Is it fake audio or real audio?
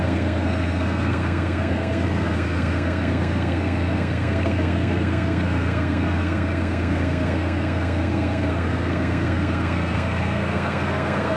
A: fake